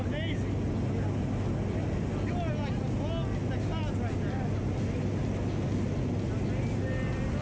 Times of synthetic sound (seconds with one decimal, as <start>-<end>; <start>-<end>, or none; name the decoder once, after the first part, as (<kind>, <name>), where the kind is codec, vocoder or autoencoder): none